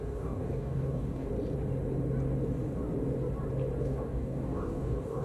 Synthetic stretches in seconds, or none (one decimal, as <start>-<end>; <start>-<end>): 0.0-1.3; 3.8-5.2